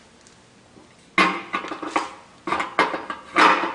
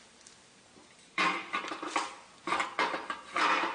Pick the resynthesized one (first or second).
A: second